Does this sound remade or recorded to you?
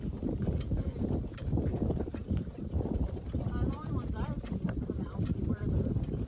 remade